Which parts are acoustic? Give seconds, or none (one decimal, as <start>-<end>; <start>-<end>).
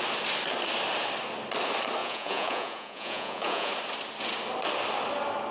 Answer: 0.0-2.0; 3.7-5.5